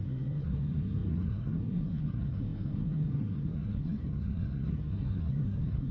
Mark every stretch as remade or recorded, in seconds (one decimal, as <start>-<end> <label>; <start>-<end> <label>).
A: 0.0-5.9 remade